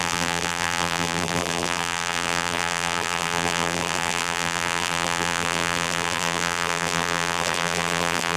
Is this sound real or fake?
fake